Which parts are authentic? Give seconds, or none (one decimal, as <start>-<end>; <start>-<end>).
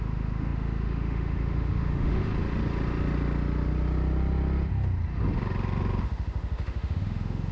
2.3-6.0